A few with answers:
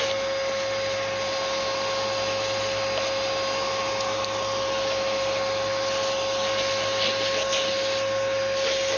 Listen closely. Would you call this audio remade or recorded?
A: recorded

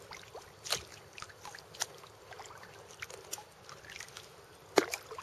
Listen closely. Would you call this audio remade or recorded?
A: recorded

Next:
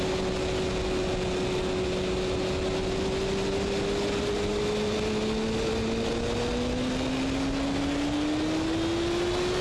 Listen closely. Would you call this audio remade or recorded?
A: recorded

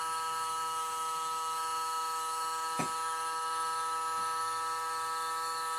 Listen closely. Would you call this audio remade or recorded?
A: remade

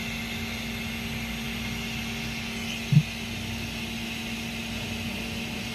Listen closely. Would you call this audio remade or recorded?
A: recorded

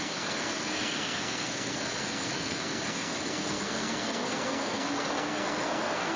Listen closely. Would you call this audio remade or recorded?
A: remade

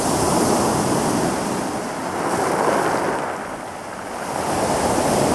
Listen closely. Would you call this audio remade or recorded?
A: recorded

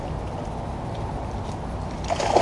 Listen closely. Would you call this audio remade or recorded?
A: recorded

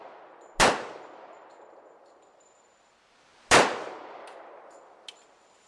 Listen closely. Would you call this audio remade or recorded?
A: recorded